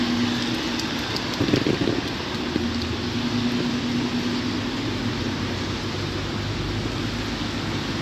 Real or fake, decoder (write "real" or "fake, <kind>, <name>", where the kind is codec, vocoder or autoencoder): real